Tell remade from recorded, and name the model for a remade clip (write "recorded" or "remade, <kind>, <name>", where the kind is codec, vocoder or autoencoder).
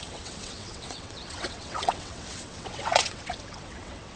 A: remade, vocoder, WaveNeXt